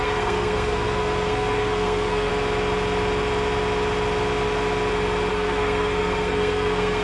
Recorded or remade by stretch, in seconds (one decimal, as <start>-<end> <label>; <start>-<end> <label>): 0.0-2.3 remade; 2.3-5.3 recorded; 5.3-7.0 remade